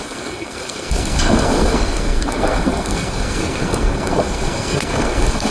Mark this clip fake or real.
fake